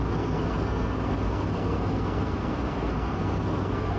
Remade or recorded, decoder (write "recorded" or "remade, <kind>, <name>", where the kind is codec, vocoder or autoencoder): remade, codec, SNAC